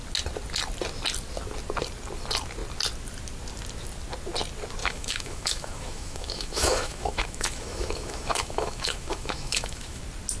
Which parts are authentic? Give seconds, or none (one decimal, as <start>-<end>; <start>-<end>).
0.0-4.8; 10.0-10.4